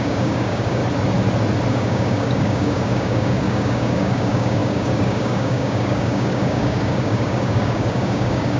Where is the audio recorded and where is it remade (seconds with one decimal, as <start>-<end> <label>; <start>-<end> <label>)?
0.0-0.8 remade; 0.8-1.7 recorded; 1.7-8.6 remade